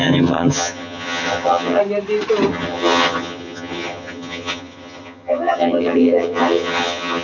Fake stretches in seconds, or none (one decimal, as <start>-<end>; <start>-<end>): 0.0-1.8; 2.5-7.2